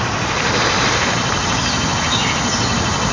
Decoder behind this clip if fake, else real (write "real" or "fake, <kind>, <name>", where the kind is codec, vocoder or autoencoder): real